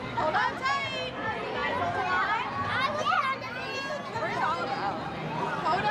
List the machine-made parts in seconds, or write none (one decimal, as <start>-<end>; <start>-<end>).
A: none